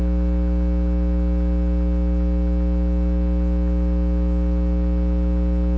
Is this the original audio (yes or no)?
yes